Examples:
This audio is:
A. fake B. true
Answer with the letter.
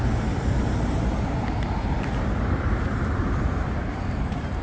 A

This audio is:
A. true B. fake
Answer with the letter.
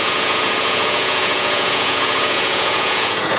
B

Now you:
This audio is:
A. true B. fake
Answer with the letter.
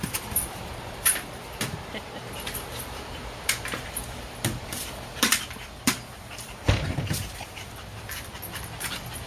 B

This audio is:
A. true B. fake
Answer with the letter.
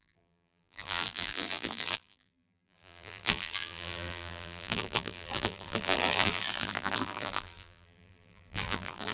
B